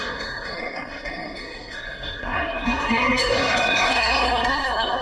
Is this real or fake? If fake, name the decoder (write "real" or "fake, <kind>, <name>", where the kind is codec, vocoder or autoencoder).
fake, codec, SNAC